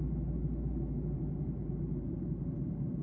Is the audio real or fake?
real